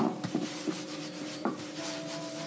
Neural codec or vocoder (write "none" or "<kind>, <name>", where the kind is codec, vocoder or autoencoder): none